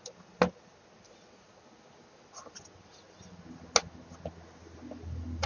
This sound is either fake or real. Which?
real